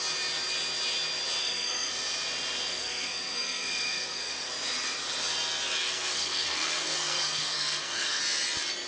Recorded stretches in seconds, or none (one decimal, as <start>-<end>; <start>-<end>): 0.0-1.4; 1.9-2.7; 4.5-5.8; 8.2-8.9